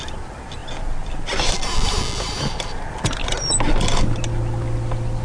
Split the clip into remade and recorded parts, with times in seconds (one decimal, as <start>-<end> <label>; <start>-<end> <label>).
0.0-5.2 recorded